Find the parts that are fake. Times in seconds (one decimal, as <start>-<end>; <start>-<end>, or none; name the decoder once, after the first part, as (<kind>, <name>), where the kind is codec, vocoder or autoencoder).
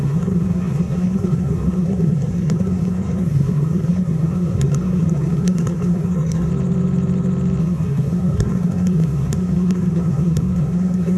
0.0-6.5 (codec, SNAC); 7.6-11.2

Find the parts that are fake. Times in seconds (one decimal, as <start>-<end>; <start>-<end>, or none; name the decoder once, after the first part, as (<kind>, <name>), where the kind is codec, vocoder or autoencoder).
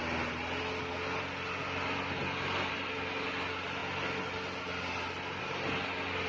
none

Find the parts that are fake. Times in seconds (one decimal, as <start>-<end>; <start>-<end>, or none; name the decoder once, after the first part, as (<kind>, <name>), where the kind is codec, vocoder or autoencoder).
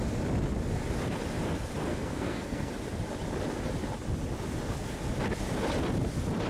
1.9-2.7 (codec, SNAC)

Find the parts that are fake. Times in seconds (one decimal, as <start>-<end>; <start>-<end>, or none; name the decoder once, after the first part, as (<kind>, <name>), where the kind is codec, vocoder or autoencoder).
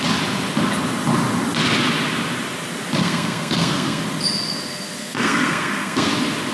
3.0-4.0 (codec, SNAC); 5.0-6.1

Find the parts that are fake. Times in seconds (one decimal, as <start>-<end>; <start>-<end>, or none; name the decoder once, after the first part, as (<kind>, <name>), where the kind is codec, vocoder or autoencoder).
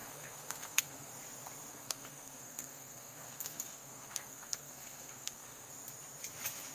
0.0-1.1 (codec, SNAC); 1.7-5.7